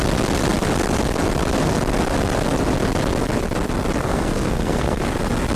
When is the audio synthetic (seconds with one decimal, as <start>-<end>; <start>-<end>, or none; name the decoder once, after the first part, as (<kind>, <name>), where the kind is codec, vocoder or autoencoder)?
4.0-5.1 (codec, SNAC)